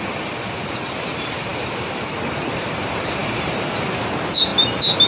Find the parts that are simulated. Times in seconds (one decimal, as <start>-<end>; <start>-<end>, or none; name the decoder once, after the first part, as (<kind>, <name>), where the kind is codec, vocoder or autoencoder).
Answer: 0.0-4.5 (vocoder, BigVGAN v2)